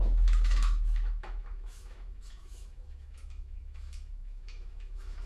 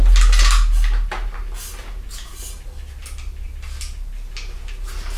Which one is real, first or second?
second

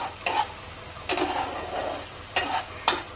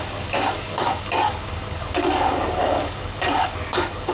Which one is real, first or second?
first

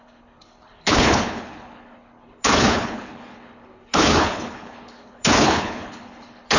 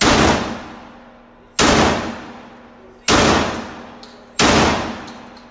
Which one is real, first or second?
second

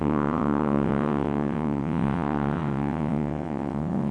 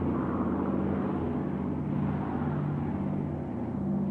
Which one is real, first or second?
second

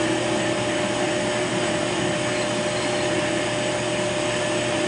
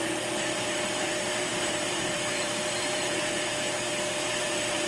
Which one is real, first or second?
first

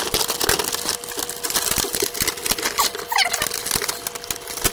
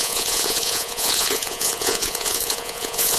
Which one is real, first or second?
first